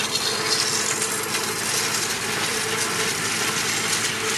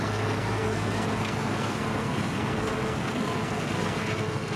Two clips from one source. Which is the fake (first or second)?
second